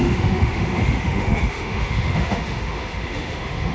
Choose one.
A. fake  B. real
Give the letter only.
A